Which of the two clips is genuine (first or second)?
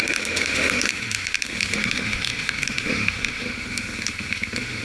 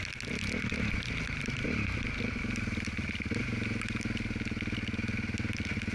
second